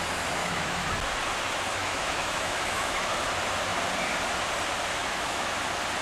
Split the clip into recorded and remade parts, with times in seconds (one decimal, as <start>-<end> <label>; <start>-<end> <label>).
0.0-0.4 recorded; 0.4-0.9 remade; 0.9-1.8 recorded; 1.8-3.1 remade; 3.1-5.0 recorded; 5.0-5.6 remade; 5.6-6.0 recorded